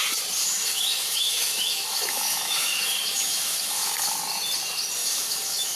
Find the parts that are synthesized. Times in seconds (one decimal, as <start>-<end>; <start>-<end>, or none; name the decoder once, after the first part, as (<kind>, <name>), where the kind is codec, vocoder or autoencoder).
0.4-3.9 (autoencoder, DAC-VAE); 5.0-5.8